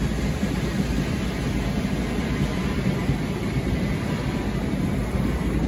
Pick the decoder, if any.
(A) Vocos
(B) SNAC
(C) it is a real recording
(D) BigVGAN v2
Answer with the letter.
D